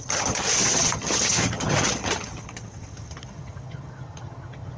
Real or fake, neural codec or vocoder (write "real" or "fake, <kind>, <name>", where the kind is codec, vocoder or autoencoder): fake, vocoder, HiFi-GAN